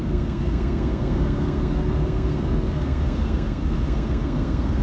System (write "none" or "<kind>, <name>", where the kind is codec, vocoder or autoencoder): codec, SNAC